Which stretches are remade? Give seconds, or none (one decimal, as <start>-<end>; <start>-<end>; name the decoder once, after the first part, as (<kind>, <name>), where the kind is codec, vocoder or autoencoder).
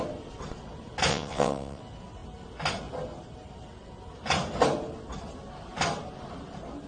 1.1-1.8 (vocoder, WaveNeXt)